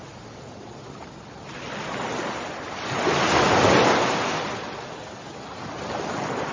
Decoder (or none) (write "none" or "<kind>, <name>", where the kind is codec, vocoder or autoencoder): none